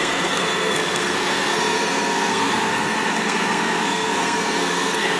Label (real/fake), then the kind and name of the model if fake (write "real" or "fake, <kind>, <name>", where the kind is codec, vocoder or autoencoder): fake, codec, SNAC